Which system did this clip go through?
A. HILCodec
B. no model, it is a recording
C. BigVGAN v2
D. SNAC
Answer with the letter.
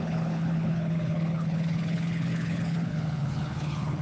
A